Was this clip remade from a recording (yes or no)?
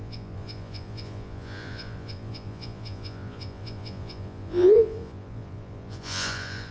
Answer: yes